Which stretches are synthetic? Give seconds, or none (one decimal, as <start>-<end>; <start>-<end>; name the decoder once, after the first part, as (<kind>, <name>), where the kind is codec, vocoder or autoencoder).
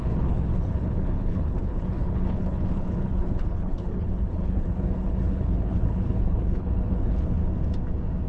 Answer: 0.0-7.4 (codec, HILCodec)